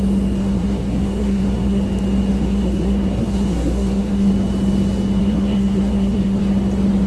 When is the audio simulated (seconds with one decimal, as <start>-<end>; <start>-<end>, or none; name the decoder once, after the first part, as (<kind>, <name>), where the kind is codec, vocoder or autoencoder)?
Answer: 0.4-1.8 (codec, SNAC); 2.3-4.3; 5.2-6.4